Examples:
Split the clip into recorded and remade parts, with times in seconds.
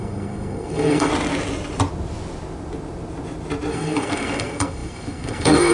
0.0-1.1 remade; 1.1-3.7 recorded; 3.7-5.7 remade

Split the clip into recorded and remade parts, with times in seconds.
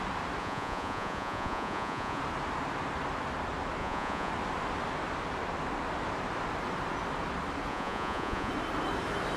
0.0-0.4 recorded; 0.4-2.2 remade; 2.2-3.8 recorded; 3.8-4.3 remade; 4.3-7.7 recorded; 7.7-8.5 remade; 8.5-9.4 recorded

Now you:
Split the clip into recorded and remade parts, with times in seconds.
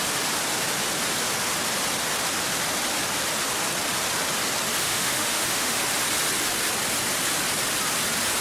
0.0-4.8 recorded; 4.8-5.8 remade; 5.8-8.4 recorded